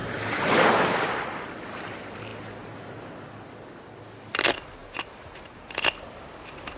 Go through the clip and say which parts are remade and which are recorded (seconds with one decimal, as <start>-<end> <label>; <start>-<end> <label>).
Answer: 0.0-6.8 recorded